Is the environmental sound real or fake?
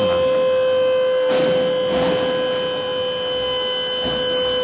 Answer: real